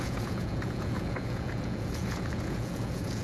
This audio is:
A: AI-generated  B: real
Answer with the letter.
A